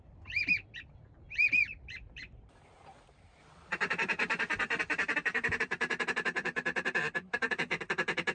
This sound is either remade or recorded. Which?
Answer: remade